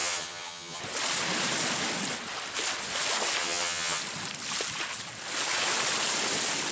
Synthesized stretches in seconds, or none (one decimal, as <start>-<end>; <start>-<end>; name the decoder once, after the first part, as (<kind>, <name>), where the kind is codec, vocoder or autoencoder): 0.0-0.8 (vocoder, HiFi-GAN); 3.4-4.0